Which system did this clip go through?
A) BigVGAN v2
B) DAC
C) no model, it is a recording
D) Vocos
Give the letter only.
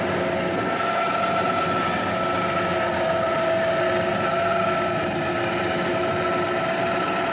C